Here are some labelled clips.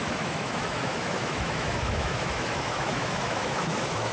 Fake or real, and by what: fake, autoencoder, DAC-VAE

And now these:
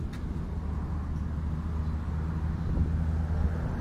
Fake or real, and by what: real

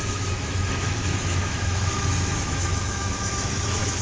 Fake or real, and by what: fake, autoencoder, DAC-VAE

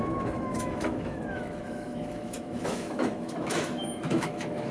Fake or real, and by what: fake, autoencoder, DAC-VAE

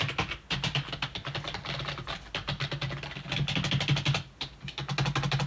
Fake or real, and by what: real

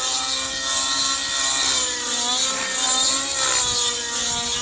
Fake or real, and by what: real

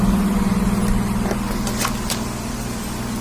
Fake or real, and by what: real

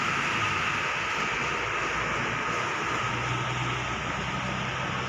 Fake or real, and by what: real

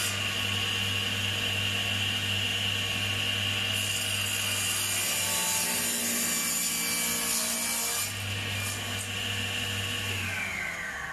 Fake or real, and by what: real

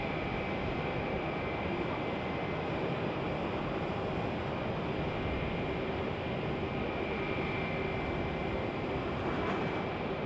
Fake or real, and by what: real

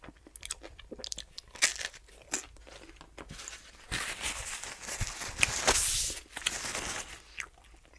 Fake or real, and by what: real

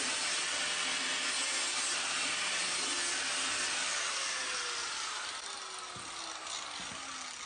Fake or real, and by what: real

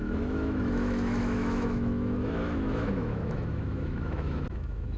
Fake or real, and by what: fake, autoencoder, DAC-VAE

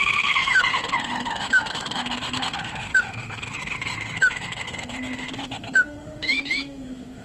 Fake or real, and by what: fake, autoencoder, DAC-VAE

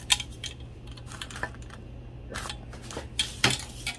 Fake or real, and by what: real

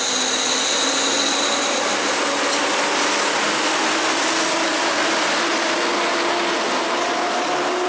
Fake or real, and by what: real